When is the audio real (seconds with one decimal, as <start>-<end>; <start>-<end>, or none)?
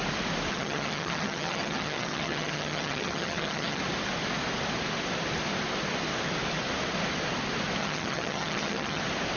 0.0-0.5; 3.8-7.8; 9.0-9.4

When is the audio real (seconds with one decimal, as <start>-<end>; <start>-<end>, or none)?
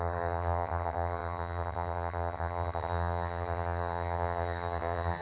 none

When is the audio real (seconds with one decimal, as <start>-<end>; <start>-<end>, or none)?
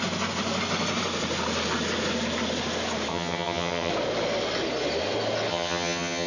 0.0-3.1; 3.9-5.5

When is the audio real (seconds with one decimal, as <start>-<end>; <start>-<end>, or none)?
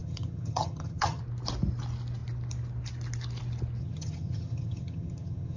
1.2-3.8